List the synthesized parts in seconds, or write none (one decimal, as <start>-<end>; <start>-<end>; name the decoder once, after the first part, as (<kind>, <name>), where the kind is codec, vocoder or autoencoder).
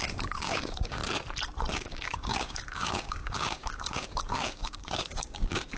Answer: 0.0-1.0 (codec, DAC); 1.7-5.8